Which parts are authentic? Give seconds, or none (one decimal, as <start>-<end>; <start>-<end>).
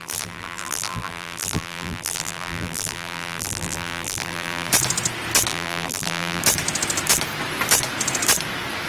4.7-5.5; 6.4-8.9